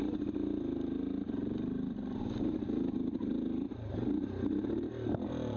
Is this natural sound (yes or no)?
yes